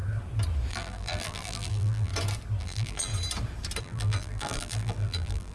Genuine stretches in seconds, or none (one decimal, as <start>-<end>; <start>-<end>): 0.0-0.7; 2.1-2.6; 3.1-3.8